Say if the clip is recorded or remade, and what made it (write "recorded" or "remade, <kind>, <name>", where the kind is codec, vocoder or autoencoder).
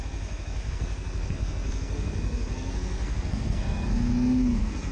remade, codec, SNAC